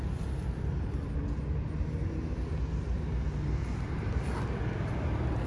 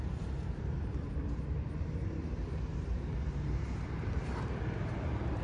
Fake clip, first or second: second